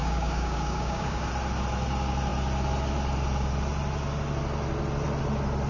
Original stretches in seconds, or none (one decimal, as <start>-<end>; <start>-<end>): 1.3-5.7